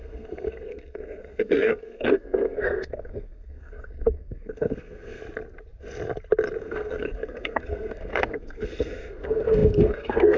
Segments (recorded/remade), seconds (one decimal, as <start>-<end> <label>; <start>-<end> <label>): 0.0-5.2 remade; 5.2-6.6 recorded; 6.6-10.4 remade